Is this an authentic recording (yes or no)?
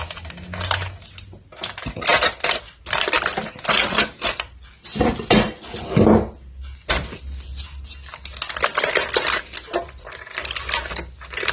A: yes